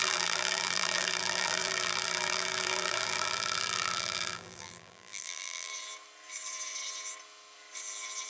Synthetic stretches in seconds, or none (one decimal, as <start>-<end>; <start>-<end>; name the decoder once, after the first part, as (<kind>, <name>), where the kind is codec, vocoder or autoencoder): 0.0-5.7 (vocoder, BigVGAN v2)